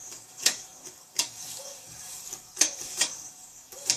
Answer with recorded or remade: remade